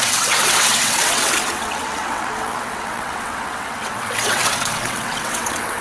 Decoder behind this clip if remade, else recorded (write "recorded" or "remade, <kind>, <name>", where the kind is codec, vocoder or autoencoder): remade, vocoder, WaveNeXt